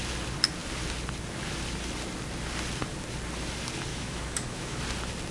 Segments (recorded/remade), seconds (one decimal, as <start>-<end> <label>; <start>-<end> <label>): 0.0-3.9 recorded; 3.9-4.8 remade; 4.8-5.3 recorded